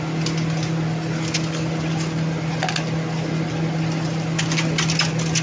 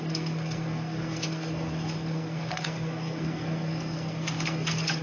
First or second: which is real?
first